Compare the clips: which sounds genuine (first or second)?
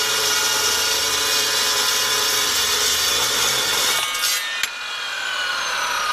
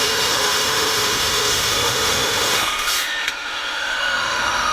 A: first